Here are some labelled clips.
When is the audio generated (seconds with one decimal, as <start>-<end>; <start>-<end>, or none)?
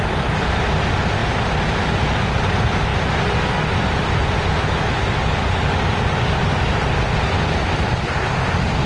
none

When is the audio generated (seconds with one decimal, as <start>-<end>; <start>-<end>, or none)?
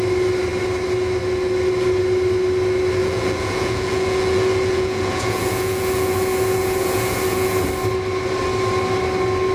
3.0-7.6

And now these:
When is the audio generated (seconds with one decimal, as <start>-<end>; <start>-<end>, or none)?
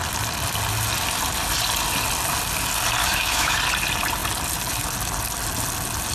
3.0-3.6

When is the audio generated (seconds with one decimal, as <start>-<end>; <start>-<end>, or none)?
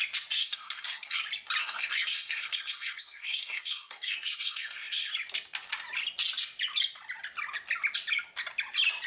0.4-1.2; 1.6-5.1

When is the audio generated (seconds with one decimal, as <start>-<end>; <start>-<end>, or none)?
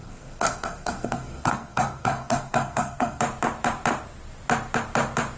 0.0-3.2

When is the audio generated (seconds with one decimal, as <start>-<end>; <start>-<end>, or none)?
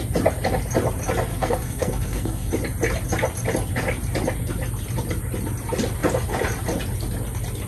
1.3-2.5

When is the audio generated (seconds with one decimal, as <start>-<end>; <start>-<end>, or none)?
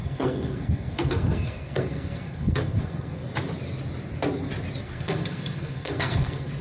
0.0-3.2; 4.8-6.6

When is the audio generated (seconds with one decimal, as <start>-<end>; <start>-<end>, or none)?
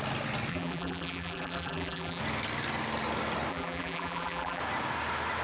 0.5-2.2; 3.5-4.6